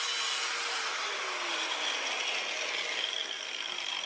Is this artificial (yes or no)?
no